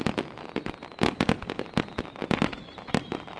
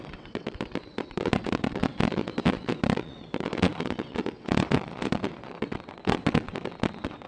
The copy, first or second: second